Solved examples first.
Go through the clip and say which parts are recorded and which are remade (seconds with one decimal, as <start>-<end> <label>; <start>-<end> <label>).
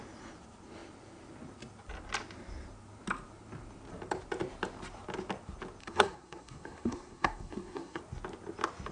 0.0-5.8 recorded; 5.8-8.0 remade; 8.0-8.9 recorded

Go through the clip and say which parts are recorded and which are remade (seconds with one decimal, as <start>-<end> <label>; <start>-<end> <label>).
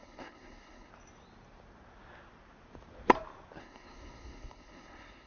0.0-0.9 remade; 0.9-3.6 recorded; 3.6-5.3 remade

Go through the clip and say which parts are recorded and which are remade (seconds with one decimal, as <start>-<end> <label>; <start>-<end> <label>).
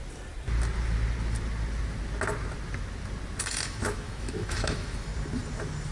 0.0-3.5 recorded; 3.5-5.1 remade; 5.1-5.9 recorded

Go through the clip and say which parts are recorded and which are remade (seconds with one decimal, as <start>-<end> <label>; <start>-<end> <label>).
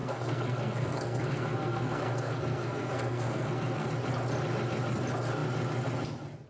0.0-3.9 remade; 3.9-6.5 recorded